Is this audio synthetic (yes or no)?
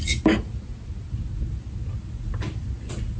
no